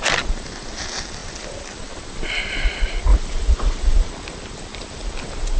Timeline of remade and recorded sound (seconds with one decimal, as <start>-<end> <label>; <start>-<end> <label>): 0.0-3.1 recorded; 3.1-4.1 remade; 4.1-5.6 recorded